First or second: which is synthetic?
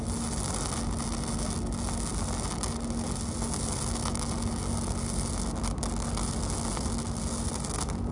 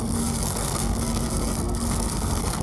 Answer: second